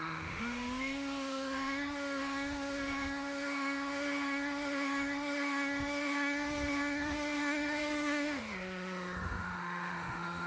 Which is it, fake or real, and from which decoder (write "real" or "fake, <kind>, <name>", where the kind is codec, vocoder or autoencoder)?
fake, autoencoder, DAC-VAE